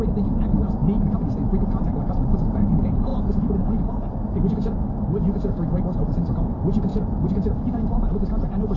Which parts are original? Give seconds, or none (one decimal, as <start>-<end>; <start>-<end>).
0.0-8.8